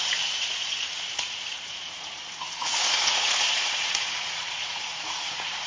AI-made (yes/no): yes